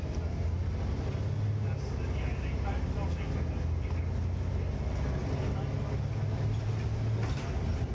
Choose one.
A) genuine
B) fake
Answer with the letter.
A